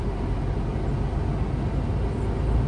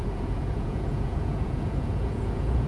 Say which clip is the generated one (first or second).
second